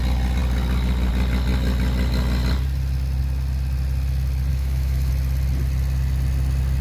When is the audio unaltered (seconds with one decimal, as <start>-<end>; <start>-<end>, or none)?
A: 0.0-4.5; 5.1-6.8